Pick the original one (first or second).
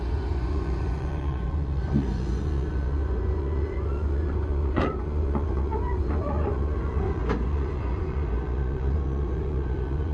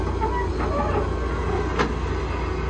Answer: second